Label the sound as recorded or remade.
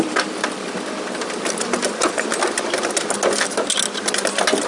recorded